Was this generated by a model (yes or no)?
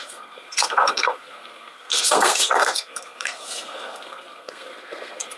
yes